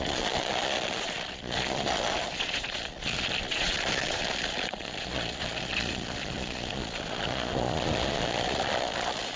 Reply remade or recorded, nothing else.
remade